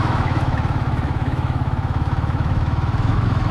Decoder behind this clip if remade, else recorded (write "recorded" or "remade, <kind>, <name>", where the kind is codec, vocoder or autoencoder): remade, autoencoder, DAC-VAE